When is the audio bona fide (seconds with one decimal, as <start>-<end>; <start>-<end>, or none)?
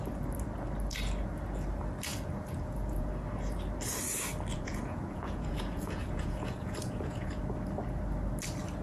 0.0-2.1; 3.1-4.5; 7.4-8.8